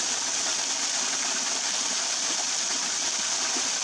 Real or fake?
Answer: real